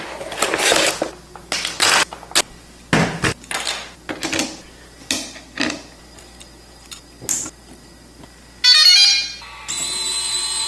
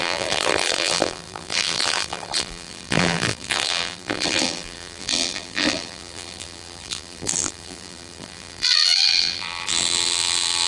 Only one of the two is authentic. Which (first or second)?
first